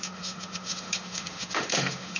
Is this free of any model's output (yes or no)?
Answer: no